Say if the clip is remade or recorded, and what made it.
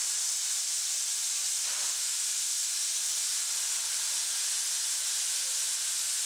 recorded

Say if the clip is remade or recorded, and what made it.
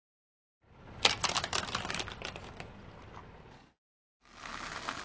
recorded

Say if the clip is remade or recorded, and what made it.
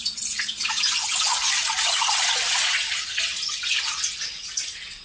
remade, vocoder, Vocos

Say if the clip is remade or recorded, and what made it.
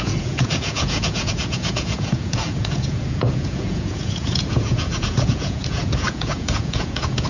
remade, vocoder, Vocos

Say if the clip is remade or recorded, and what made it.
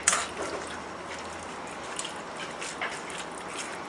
recorded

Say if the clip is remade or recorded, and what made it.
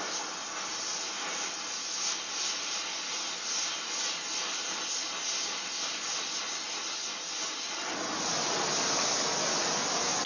recorded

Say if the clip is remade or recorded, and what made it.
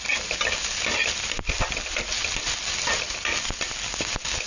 recorded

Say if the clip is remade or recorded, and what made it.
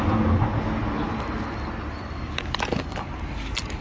recorded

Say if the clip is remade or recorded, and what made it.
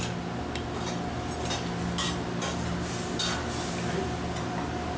recorded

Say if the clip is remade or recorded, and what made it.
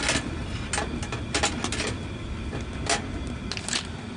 recorded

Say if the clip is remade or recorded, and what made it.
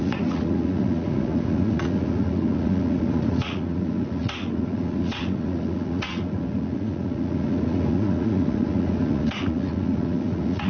remade, vocoder, Vocos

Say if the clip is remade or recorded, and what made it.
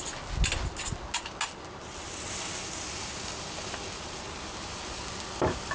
recorded